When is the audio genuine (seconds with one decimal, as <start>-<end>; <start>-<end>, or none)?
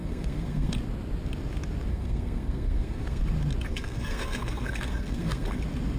0.7-1.9; 3.2-3.7; 5.6-6.0